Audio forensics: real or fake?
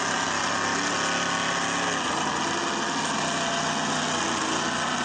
real